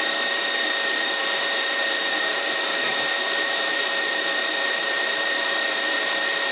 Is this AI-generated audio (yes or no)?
yes